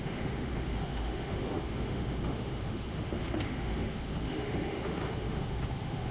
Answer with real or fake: fake